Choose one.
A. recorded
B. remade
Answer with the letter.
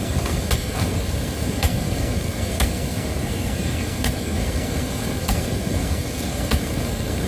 B